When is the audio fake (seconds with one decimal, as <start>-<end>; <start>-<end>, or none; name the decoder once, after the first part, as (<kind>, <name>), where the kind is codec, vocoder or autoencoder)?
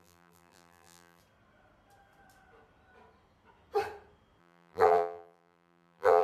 0.0-1.2 (vocoder, BigVGAN v2); 4.4-6.2